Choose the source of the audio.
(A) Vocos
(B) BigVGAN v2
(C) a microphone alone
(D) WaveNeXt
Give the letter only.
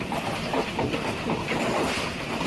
C